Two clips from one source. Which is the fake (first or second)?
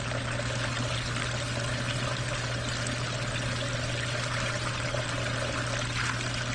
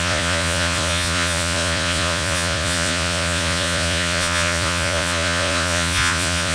second